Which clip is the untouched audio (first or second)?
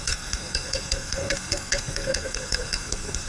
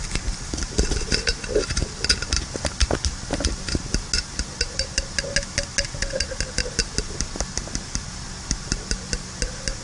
second